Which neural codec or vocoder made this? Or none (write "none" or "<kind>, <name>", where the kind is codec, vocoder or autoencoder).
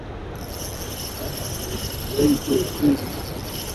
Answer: none